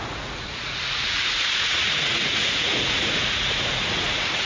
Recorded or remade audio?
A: remade